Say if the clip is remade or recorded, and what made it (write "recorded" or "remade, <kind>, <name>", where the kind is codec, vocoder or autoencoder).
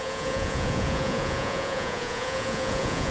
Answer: remade, vocoder, Vocos